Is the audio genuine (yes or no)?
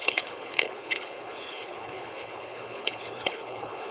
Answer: no